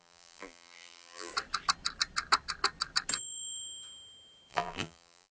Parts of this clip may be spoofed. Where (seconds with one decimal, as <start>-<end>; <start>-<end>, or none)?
0.0-1.3; 4.5-5.3